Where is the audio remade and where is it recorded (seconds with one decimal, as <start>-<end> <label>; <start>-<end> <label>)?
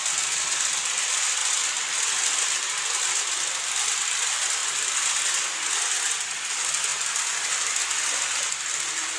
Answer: 0.0-9.2 recorded